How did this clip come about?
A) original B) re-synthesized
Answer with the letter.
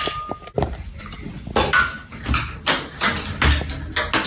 A